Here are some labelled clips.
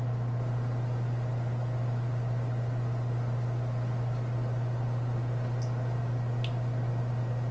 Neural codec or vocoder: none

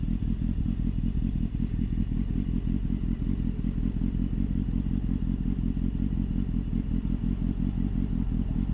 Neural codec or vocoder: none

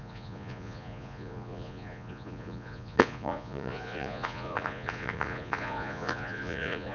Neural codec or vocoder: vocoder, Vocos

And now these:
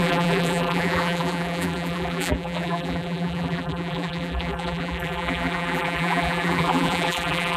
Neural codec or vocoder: vocoder, BigVGAN v2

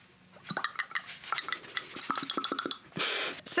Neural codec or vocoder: none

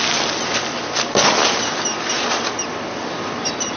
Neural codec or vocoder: none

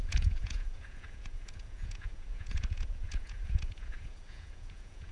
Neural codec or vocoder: vocoder, Vocos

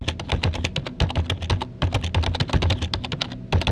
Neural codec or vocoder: none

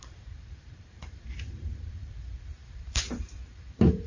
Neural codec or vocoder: vocoder, BigVGAN v2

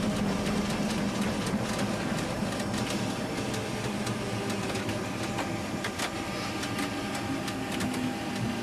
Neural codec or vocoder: none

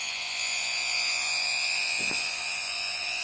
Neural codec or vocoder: vocoder, Vocos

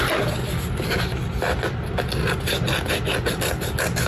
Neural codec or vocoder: none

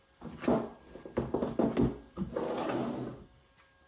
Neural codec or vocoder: none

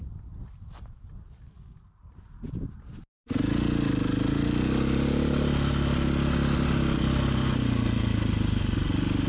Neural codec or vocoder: none